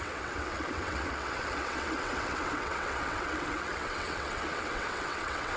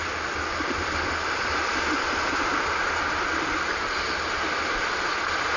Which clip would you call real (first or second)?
second